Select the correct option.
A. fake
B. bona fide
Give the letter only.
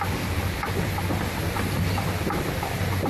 B